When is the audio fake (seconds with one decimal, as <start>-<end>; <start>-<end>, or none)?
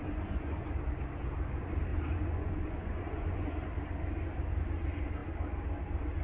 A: 0.0-0.7; 1.9-3.7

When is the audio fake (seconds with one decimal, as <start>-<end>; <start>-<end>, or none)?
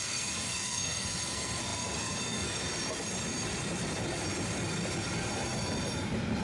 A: 0.0-2.6